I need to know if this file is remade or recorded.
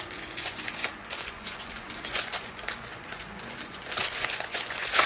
remade